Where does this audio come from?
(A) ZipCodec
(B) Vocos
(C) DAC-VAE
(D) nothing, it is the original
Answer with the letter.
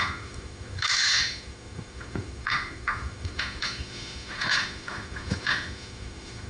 C